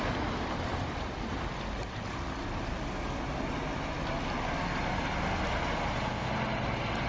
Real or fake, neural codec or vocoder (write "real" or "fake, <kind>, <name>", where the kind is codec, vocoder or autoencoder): real